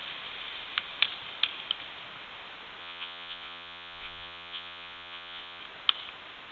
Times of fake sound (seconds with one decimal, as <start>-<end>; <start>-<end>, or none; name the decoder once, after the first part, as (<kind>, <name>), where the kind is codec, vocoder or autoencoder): 2.8-5.6 (vocoder, Vocos)